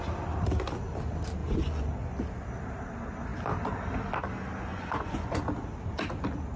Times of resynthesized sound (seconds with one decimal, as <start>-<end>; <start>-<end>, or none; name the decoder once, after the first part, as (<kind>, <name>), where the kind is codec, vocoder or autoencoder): 1.4-1.9 (vocoder, Vocos); 4.7-5.4